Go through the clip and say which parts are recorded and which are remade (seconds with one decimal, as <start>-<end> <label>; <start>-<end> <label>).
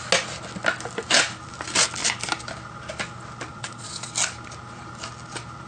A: 0.0-3.5 recorded; 3.5-4.1 remade; 4.1-5.7 recorded